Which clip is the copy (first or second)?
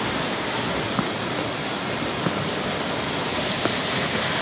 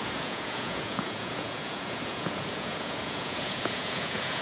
second